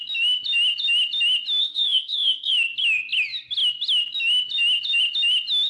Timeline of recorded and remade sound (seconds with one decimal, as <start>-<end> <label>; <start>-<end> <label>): 0.0-1.6 recorded; 1.6-2.5 remade; 2.5-5.7 recorded